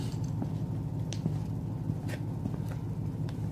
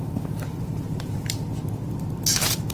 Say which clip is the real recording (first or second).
first